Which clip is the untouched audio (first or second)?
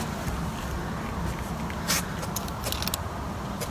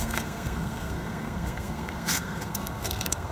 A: first